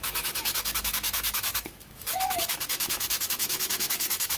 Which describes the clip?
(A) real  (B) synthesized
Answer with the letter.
B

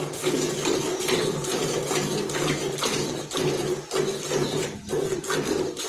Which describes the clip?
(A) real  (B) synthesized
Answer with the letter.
A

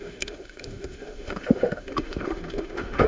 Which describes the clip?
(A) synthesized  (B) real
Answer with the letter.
A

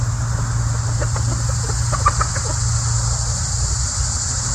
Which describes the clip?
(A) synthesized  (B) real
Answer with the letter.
B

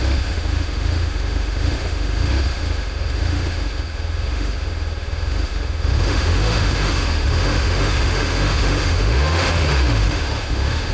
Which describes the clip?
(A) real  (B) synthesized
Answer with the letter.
B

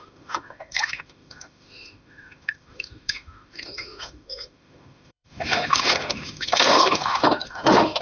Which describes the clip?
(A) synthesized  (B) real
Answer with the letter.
A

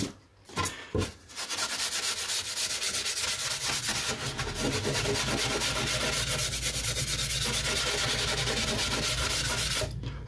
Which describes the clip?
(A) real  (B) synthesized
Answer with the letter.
A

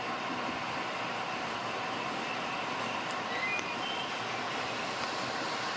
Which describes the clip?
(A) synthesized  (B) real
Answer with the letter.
B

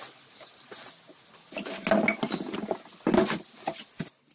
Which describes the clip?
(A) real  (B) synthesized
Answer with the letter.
A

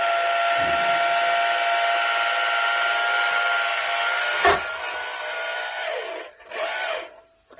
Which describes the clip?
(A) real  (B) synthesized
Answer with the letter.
A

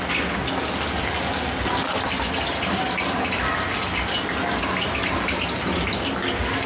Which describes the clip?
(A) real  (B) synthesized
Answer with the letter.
A